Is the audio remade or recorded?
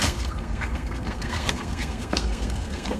remade